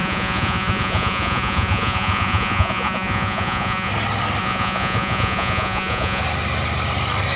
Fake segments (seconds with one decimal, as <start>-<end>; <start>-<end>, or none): 0.0-3.9; 4.4-6.2